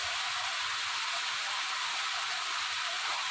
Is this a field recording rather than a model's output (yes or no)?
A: yes